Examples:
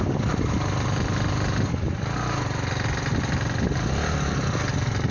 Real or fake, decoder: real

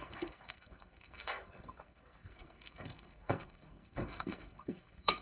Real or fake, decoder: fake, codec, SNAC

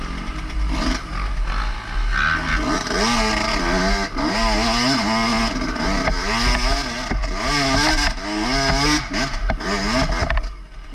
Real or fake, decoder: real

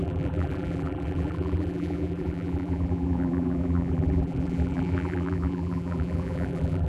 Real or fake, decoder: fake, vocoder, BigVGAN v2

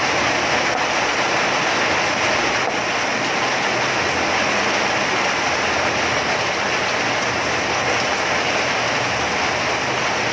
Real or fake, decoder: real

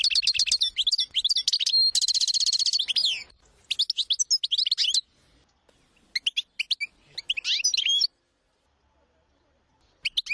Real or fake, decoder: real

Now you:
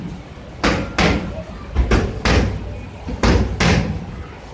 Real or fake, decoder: real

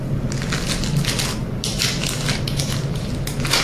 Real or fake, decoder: real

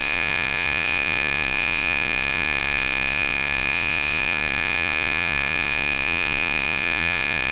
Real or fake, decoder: fake, vocoder, Vocos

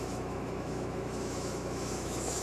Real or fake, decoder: fake, autoencoder, DAC-VAE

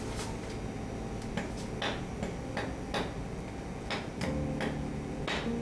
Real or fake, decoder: real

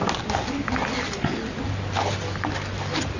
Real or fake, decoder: real